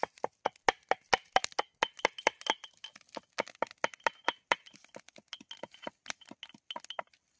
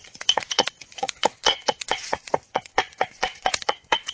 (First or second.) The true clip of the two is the first